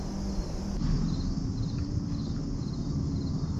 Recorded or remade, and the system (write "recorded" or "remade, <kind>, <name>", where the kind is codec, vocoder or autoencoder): recorded